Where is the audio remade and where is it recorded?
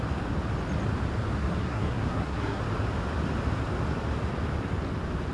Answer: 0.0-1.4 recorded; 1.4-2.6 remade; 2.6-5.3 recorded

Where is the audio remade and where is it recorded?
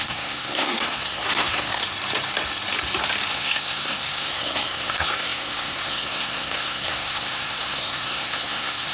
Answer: 0.0-1.8 remade; 1.8-3.3 recorded; 3.3-8.9 remade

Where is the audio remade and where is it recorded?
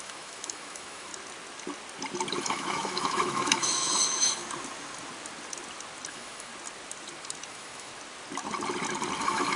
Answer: 0.0-1.1 remade; 1.1-2.4 recorded; 2.4-4.4 remade; 4.4-6.1 recorded; 6.1-6.5 remade; 6.5-7.5 recorded; 7.5-7.9 remade; 7.9-9.2 recorded; 9.2-9.6 remade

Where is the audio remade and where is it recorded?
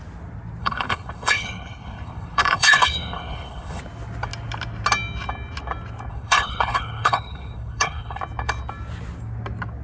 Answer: 0.0-0.6 recorded; 0.6-3.8 remade; 3.8-6.1 recorded; 6.1-8.2 remade; 8.2-9.8 recorded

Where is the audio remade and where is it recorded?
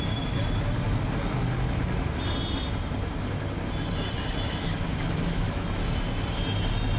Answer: 0.0-0.4 remade; 0.4-4.6 recorded; 4.6-5.8 remade; 5.8-7.0 recorded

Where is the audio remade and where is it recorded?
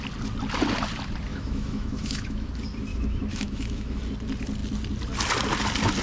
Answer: 0.0-1.3 recorded; 1.3-2.5 remade; 2.5-2.9 recorded; 2.9-4.0 remade; 4.0-6.0 recorded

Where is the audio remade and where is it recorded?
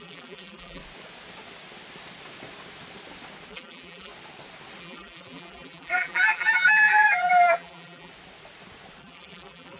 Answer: 0.0-0.8 remade; 0.8-3.5 recorded; 3.5-4.1 remade; 4.1-4.8 recorded; 4.8-8.1 remade; 8.1-9.0 recorded; 9.0-9.8 remade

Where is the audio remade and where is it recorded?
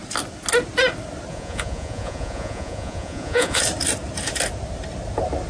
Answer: 0.0-1.3 recorded; 1.3-3.6 remade; 3.6-5.5 recorded